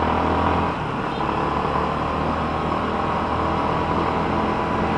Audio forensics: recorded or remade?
recorded